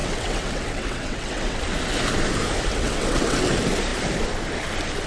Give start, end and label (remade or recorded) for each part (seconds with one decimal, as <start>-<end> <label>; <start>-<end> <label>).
0.0-1.6 remade; 1.6-2.7 recorded; 2.7-3.5 remade; 3.5-5.1 recorded